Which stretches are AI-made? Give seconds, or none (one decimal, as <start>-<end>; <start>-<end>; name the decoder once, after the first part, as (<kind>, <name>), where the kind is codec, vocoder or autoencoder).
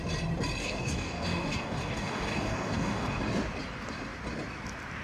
0.6-3.2 (codec, DAC)